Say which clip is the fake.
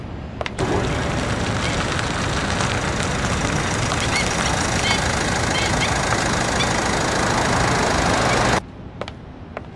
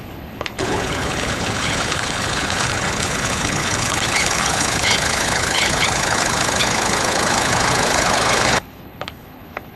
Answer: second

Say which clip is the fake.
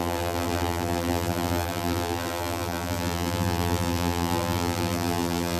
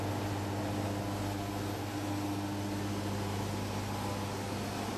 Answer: first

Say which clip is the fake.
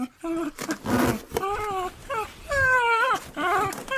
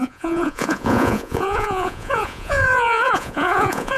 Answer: second